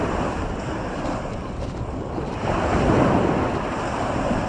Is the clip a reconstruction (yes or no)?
no